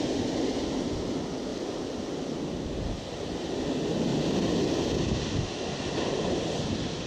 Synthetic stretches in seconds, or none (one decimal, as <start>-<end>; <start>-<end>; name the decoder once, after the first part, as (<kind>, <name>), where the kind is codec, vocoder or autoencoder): none